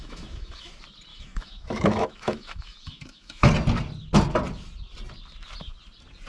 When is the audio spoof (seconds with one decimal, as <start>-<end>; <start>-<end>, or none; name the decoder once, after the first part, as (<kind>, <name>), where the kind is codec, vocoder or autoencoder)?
0.0-0.7 (autoencoder, DAC-VAE); 1.1-3.5